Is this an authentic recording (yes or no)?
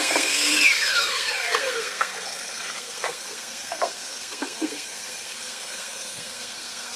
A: no